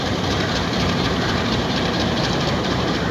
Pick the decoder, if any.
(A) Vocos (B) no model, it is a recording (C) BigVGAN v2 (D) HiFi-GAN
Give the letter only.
C